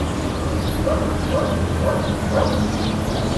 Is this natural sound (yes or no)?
yes